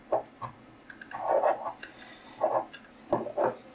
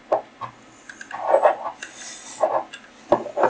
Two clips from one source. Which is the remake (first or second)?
first